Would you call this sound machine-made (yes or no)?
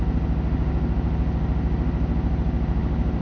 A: no